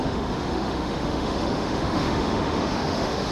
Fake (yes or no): yes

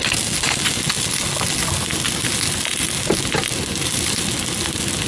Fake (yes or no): no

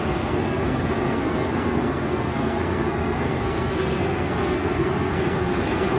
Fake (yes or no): yes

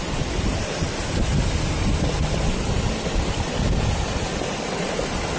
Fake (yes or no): no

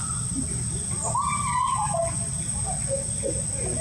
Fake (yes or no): no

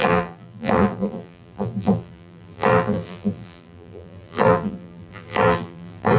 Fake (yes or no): yes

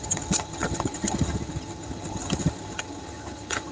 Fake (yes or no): yes